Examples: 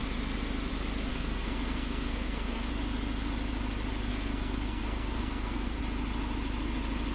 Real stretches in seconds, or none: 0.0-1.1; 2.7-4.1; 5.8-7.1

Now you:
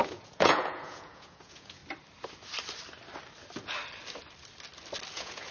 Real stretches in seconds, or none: 1.8-5.1

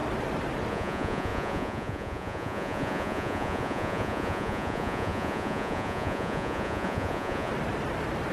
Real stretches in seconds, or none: 0.0-0.7; 7.5-8.3

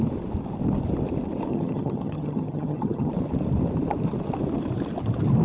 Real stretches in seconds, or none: 0.0-1.5; 3.1-5.4